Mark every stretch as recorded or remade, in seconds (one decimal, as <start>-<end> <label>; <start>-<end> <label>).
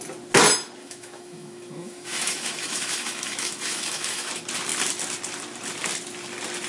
0.0-0.8 recorded; 0.8-4.3 remade; 4.3-6.7 recorded